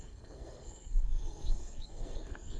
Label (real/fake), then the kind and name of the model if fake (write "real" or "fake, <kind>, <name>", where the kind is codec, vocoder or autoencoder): fake, codec, SNAC